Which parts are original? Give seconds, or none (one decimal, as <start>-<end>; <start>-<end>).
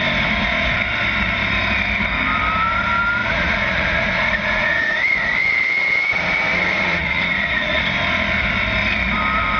0.0-3.2; 7.8-9.6